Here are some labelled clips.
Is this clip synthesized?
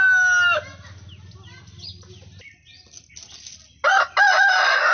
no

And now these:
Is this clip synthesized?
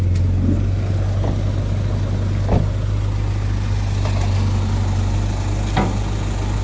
no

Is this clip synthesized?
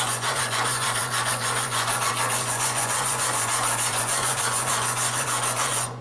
yes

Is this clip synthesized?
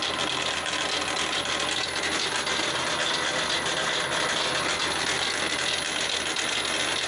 no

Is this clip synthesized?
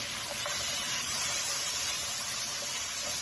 yes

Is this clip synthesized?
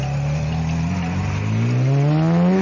no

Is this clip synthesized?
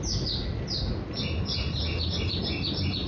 no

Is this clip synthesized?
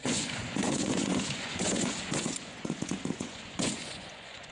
yes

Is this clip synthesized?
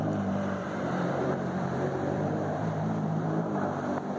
yes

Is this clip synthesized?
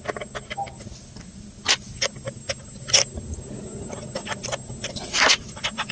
no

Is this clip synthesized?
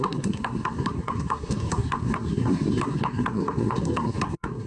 yes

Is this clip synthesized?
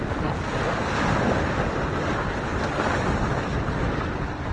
no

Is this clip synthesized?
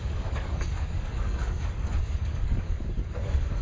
yes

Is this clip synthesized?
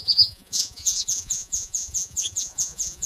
yes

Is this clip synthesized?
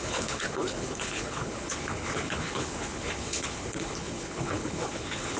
yes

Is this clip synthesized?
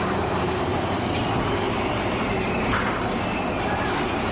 no